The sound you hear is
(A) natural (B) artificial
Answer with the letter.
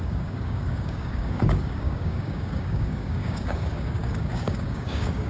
B